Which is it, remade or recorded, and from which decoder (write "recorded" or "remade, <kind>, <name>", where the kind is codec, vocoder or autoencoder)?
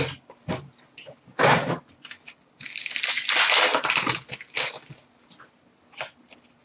recorded